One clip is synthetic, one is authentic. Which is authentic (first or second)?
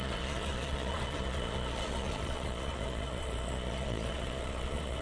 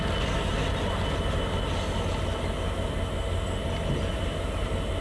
second